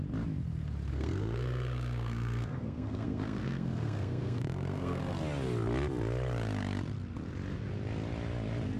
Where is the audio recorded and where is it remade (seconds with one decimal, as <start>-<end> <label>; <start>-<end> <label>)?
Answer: 0.0-0.9 recorded; 0.9-5.0 remade; 5.0-8.8 recorded